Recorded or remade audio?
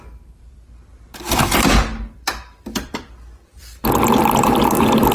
remade